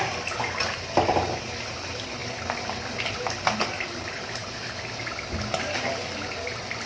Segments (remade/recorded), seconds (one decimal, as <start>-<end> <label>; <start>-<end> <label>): 0.0-6.9 recorded